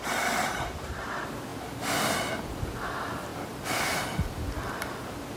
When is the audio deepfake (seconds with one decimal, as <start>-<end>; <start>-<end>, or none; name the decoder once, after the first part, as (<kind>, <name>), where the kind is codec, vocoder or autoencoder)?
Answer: none